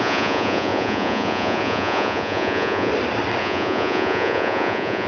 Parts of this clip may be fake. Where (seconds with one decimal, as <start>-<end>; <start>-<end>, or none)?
0.0-2.9; 3.4-5.1